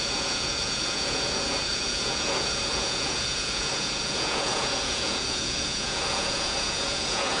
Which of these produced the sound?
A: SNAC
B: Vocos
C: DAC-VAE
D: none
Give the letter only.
B